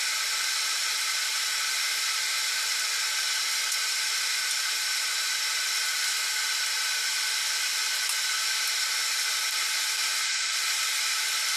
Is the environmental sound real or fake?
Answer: real